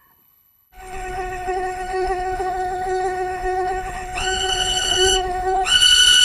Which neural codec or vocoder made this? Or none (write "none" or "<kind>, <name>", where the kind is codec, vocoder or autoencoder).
codec, HILCodec